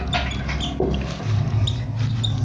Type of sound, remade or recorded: recorded